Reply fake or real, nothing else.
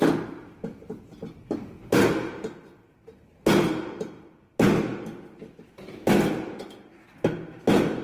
real